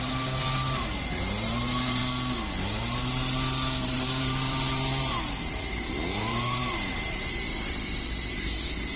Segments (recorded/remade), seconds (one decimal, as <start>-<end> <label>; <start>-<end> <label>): 0.0-2.0 remade; 2.0-3.8 recorded; 3.8-9.0 remade

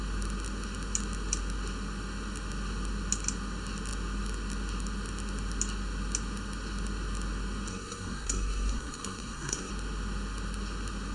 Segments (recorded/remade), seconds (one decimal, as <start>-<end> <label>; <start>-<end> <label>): 0.0-7.7 recorded; 7.7-9.7 remade; 9.7-11.1 recorded

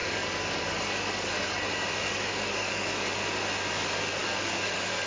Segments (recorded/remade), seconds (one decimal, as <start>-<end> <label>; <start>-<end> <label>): 0.0-3.1 remade; 3.1-4.2 recorded; 4.2-5.1 remade

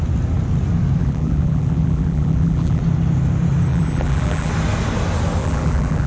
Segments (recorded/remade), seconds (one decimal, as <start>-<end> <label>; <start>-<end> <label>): 0.0-1.0 recorded; 1.0-2.8 remade; 2.8-3.7 recorded; 3.7-4.5 remade; 4.5-5.4 recorded; 5.4-6.1 remade

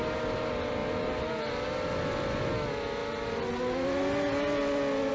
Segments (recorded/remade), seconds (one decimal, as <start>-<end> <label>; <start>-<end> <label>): 0.0-5.1 recorded

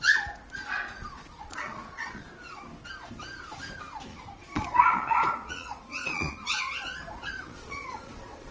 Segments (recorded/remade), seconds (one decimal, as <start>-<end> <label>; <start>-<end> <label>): 0.0-1.0 recorded; 1.0-2.3 remade; 2.3-4.1 recorded; 4.1-8.5 remade

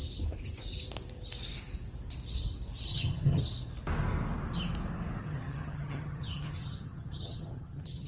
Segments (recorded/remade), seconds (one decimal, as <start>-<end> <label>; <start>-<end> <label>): 0.0-2.9 recorded; 2.9-3.4 remade; 3.4-5.2 recorded; 5.2-8.1 remade